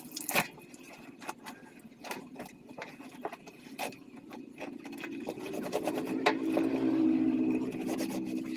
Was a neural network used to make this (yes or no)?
no